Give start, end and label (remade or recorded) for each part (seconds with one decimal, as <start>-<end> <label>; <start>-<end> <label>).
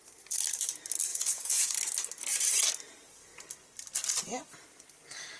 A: 0.0-1.1 recorded; 1.1-1.7 remade; 1.7-5.4 recorded